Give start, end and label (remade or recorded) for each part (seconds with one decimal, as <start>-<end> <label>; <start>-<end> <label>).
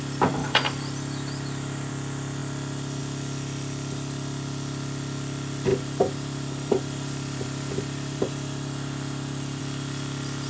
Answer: 0.0-0.4 recorded; 0.4-1.9 remade; 1.9-5.7 recorded; 5.7-9.6 remade; 9.6-10.5 recorded